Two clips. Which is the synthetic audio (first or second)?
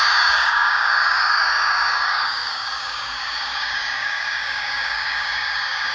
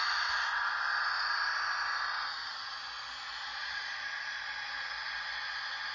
first